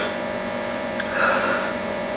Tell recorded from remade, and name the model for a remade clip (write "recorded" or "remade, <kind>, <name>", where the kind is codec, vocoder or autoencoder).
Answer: remade, vocoder, Vocos